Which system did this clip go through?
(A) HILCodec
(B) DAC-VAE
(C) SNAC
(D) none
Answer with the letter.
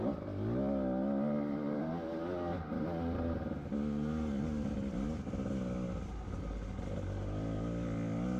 D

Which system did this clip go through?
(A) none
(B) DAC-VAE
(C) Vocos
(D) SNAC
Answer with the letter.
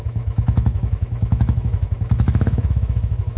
B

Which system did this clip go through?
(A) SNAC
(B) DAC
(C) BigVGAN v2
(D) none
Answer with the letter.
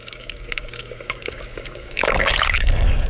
B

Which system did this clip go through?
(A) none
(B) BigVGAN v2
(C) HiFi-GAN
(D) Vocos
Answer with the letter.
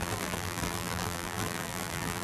B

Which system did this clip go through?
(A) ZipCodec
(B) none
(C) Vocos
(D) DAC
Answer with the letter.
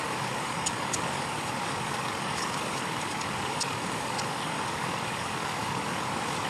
D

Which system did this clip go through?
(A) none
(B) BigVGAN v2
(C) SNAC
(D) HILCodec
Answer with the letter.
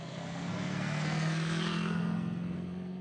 C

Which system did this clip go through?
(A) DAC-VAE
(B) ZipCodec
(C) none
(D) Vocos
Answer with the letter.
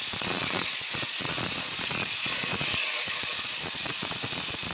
D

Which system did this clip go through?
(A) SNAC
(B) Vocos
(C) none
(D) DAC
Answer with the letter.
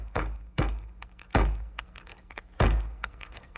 A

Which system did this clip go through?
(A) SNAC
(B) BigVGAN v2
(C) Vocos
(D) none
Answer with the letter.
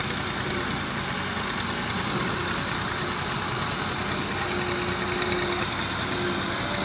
D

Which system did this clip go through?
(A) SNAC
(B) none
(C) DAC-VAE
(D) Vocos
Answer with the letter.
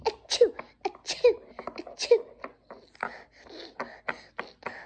B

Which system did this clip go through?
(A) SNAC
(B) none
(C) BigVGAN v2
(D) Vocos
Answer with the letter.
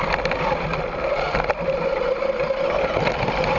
B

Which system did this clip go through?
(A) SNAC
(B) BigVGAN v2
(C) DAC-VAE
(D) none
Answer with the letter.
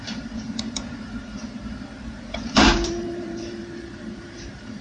B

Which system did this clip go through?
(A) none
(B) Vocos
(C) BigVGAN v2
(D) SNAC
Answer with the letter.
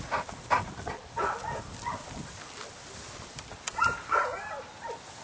A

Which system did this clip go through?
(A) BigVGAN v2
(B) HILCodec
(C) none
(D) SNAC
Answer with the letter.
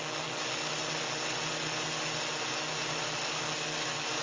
C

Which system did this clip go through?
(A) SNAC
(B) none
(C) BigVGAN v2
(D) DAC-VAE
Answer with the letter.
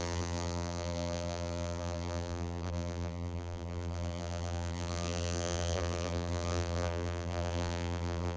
C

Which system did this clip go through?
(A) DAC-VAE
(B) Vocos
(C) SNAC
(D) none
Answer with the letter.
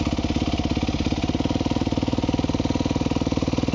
D